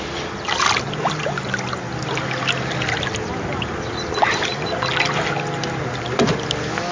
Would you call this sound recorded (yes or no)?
yes